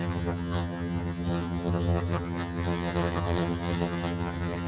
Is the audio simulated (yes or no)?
yes